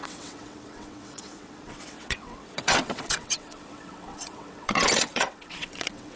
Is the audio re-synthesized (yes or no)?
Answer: yes